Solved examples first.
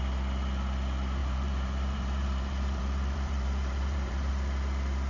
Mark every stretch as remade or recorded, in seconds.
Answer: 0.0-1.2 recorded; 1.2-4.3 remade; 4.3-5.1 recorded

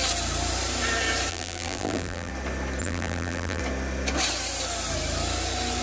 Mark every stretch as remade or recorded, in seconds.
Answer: 0.0-1.3 recorded; 1.3-2.3 remade; 2.3-2.8 recorded; 2.8-3.6 remade; 3.6-5.8 recorded

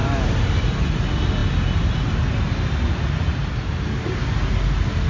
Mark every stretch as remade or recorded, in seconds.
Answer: 0.0-5.1 recorded

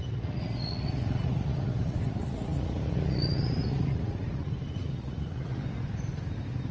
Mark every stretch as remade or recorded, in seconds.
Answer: 0.0-5.6 remade; 5.6-6.7 recorded

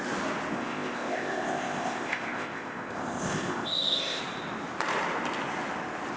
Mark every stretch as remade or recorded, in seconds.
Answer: 0.0-0.5 recorded; 0.5-4.2 remade; 4.2-6.2 recorded

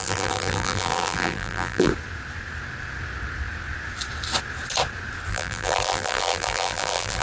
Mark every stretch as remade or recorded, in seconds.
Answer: 0.0-1.9 remade; 1.9-5.3 recorded; 5.3-7.2 remade